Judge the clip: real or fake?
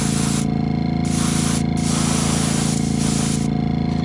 real